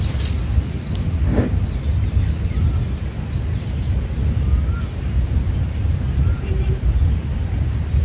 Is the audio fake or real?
real